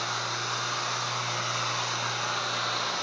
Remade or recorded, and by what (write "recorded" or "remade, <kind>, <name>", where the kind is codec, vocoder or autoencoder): recorded